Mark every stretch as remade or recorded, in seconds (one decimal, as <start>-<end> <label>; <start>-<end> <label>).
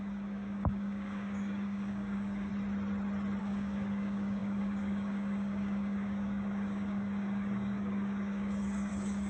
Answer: 0.0-2.5 remade; 2.5-3.4 recorded; 3.4-9.3 remade